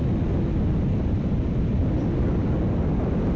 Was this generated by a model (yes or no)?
no